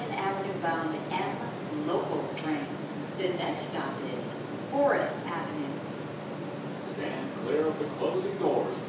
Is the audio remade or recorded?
recorded